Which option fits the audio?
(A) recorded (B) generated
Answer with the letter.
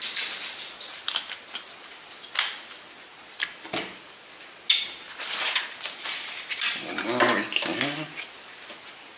A